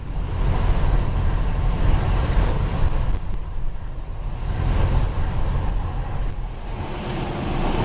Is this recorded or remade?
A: recorded